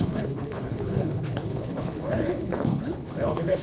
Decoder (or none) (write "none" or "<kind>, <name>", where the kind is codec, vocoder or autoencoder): codec, HILCodec